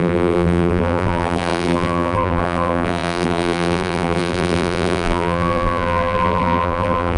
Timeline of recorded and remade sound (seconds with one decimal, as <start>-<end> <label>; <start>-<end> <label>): 0.0-7.2 remade